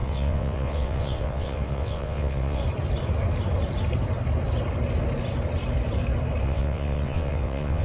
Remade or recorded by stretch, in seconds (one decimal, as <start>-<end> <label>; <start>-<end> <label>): 0.0-2.6 remade; 2.6-6.4 recorded; 6.4-7.8 remade